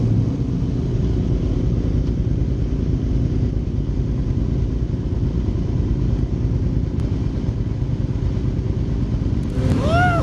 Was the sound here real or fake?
real